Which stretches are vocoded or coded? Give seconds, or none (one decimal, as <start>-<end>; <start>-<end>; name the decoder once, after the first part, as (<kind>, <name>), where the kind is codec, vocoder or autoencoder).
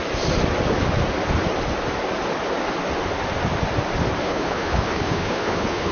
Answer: 4.2-5.9 (codec, HILCodec)